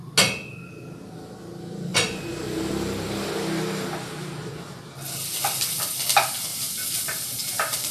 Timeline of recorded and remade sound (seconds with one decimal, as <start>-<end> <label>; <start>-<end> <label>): 0.0-1.9 recorded; 1.9-2.7 remade; 2.7-6.5 recorded; 6.5-7.9 remade